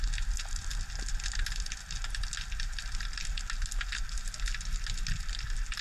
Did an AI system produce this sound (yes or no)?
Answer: no